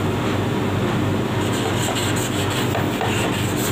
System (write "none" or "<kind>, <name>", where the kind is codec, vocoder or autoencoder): none